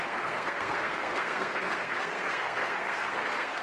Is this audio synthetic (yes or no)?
yes